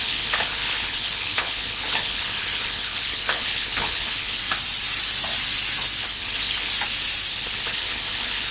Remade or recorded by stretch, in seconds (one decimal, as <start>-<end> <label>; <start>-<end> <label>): 0.0-4.4 remade; 4.4-6.0 recorded; 6.0-6.7 remade; 6.7-7.3 recorded; 7.3-8.5 remade